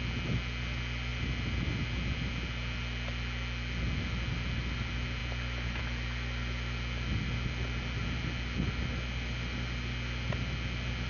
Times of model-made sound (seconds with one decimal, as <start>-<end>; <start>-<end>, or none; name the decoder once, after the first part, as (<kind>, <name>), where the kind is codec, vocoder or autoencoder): none